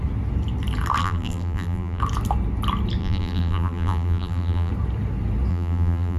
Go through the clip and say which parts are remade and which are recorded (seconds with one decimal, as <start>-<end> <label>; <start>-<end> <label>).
0.0-1.0 recorded; 1.0-2.0 remade; 2.0-3.0 recorded; 3.0-4.7 remade; 4.7-5.5 recorded; 5.5-6.2 remade